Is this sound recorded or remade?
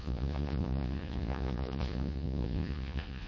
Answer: remade